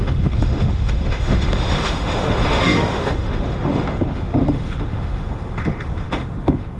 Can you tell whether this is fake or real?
fake